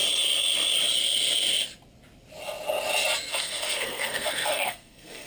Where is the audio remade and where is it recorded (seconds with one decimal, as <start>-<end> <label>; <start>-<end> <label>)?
0.0-3.3 recorded; 3.3-5.3 remade